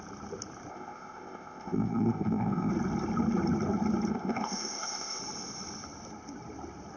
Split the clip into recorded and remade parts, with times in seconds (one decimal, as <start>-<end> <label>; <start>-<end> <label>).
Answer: 0.0-0.7 recorded; 0.7-2.7 remade; 2.7-4.1 recorded; 4.1-5.2 remade; 5.2-7.0 recorded